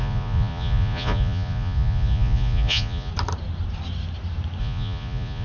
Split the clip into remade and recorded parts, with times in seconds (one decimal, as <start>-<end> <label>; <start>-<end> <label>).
0.0-3.1 remade; 3.1-4.6 recorded; 4.6-5.4 remade